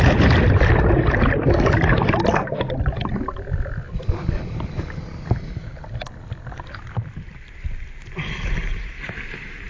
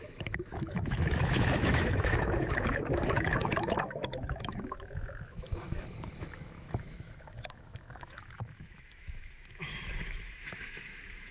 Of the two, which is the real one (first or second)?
first